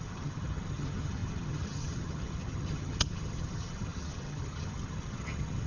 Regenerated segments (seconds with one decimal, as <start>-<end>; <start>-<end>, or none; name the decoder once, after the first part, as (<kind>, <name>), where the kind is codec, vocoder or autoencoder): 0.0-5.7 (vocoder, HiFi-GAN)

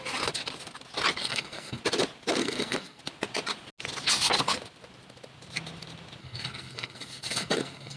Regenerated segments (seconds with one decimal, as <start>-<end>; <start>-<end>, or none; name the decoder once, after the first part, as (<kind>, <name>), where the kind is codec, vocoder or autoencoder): 1.2-1.8 (codec, SNAC); 2.4-3.0; 6.2-8.0

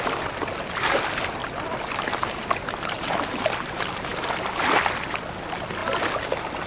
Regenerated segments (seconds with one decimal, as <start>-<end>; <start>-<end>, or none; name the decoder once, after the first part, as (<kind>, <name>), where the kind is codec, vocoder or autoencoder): none

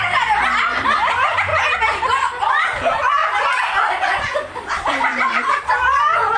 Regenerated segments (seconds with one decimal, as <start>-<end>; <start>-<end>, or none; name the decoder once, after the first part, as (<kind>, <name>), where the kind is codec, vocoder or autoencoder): 0.0-1.5 (vocoder, BigVGAN v2); 2.1-3.2; 4.2-6.4

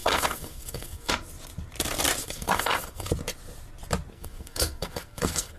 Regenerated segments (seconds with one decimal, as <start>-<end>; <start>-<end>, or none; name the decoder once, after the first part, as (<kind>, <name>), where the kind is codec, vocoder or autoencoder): 0.0-1.1 (codec, SNAC); 2.2-3.1; 4.1-5.6